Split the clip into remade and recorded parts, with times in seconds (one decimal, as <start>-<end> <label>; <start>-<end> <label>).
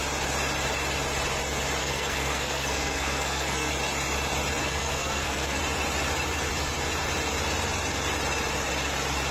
0.0-1.8 recorded; 1.8-3.7 remade; 3.7-4.6 recorded; 4.6-5.6 remade; 5.6-9.3 recorded